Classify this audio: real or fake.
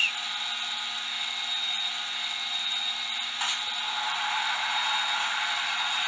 real